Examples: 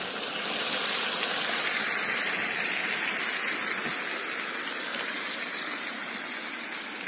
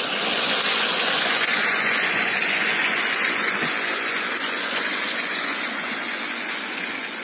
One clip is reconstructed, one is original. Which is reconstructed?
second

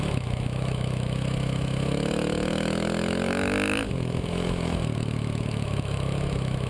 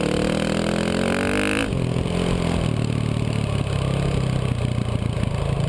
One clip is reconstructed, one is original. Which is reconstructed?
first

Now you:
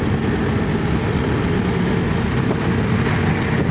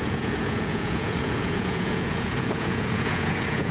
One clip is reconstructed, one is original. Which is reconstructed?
second